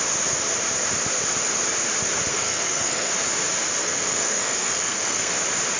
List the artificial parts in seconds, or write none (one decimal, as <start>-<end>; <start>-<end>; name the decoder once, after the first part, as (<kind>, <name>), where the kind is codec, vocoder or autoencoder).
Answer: 2.3-3.1 (codec, SNAC); 3.8-5.3